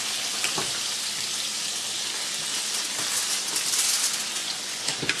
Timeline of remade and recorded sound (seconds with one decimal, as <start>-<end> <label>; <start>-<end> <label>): 0.0-4.4 recorded; 4.4-5.2 remade